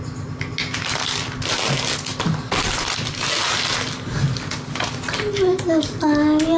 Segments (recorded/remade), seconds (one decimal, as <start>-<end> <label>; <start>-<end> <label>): 0.0-6.6 recorded

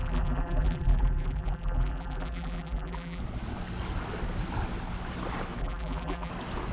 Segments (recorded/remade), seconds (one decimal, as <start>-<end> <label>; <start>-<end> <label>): 0.0-3.2 remade; 3.2-5.6 recorded; 5.6-6.3 remade; 6.3-6.7 recorded

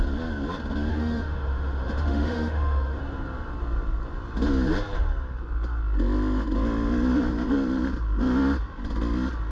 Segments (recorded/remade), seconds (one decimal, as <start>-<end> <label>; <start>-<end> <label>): 0.0-0.9 recorded; 0.9-3.0 remade; 3.0-9.5 recorded

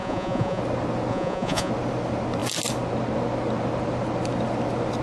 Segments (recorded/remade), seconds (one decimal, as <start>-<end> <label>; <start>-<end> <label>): 0.0-0.6 remade; 0.6-1.1 recorded; 1.1-1.7 remade; 1.7-5.0 recorded

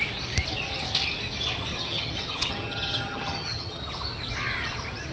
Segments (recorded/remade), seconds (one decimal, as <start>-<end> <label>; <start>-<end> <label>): 0.0-1.7 recorded; 1.7-3.8 remade; 3.8-5.1 recorded

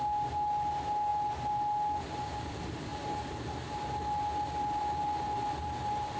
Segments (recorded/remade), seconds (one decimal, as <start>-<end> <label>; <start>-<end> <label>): 0.0-6.2 recorded